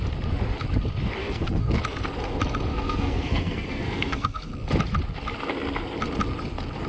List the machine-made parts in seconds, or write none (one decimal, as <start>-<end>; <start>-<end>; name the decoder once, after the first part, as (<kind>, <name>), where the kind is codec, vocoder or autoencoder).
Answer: 1.2-1.8 (codec, SNAC); 2.7-4.5